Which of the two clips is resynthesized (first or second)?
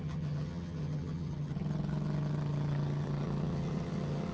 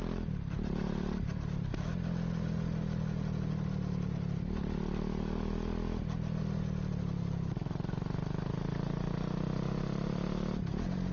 first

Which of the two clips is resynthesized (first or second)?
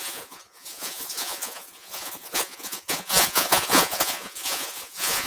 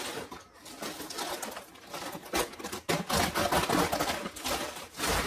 first